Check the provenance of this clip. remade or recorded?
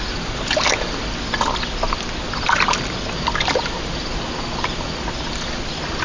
recorded